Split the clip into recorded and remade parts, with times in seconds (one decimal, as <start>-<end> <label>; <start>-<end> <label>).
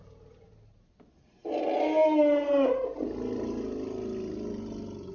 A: 0.0-5.1 recorded